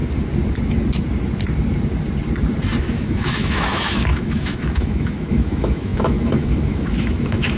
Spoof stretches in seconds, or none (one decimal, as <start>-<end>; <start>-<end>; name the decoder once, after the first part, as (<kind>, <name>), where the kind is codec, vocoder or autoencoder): 2.8-7.6 (autoencoder, DAC-VAE)